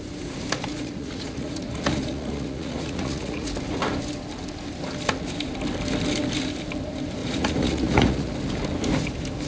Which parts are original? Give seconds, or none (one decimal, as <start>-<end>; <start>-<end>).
0.0-0.7; 3.5-7.2; 8.3-9.5